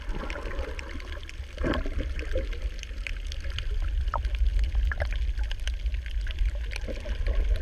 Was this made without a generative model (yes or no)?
yes